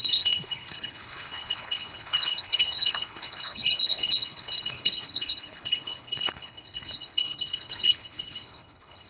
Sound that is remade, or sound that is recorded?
remade